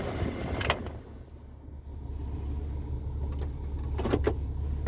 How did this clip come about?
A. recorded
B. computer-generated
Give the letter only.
A